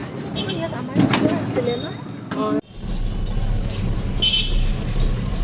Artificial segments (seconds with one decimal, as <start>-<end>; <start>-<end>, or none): none